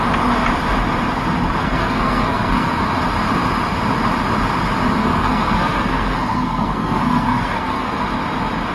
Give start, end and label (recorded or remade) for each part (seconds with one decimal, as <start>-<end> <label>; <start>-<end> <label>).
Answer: 0.0-1.6 recorded; 1.6-2.8 remade; 2.8-5.0 recorded; 5.0-8.0 remade; 8.0-8.7 recorded